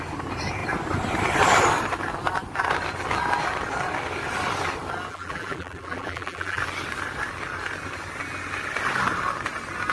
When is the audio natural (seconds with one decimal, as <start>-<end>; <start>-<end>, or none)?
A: 0.0-5.1; 6.6-9.9